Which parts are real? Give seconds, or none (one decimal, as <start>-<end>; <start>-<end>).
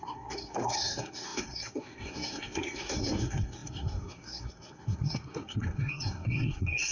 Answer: none